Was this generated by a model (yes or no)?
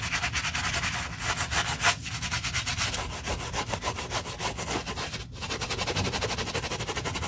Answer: no